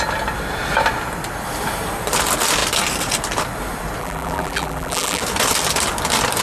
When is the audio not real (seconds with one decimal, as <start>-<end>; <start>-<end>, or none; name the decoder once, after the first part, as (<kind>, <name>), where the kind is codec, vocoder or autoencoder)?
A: 4.0-5.2 (vocoder, BigVGAN v2)